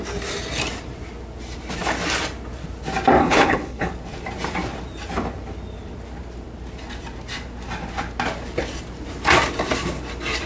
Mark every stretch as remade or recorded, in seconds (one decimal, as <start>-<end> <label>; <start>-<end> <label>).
0.0-3.2 recorded; 3.2-3.9 remade; 3.9-10.5 recorded